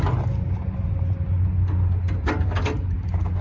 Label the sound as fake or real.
real